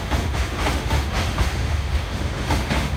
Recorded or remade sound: remade